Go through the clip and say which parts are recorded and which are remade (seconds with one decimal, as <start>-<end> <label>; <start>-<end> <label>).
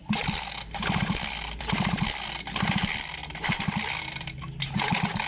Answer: 0.0-5.3 recorded